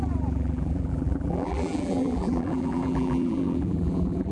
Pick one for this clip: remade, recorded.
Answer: remade